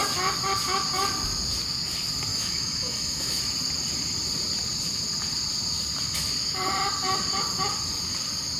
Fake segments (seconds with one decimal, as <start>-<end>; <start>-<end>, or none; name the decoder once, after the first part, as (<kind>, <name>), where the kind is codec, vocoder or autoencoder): 2.3-3.4 (autoencoder, DAC-VAE)

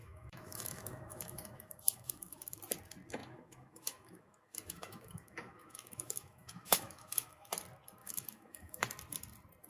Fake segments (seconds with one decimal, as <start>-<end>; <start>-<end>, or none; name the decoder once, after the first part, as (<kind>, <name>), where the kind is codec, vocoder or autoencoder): 0.0-2.6 (autoencoder, DAC-VAE); 3.2-7.5; 8.0-8.8